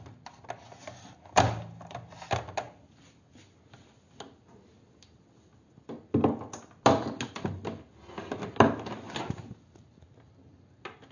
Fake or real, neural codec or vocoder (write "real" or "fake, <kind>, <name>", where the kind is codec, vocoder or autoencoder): real